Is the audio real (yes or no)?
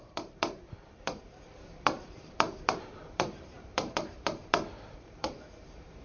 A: no